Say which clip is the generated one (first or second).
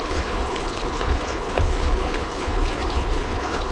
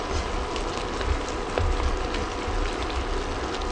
first